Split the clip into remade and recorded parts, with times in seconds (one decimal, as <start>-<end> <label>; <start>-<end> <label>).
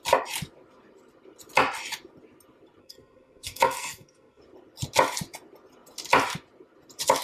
0.0-2.8 recorded; 2.8-4.4 remade; 4.4-7.2 recorded